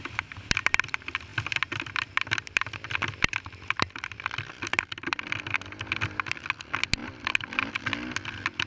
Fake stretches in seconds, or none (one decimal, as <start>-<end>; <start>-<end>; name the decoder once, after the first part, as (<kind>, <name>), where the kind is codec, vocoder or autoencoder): 7.0-7.7 (vocoder, BigVGAN v2)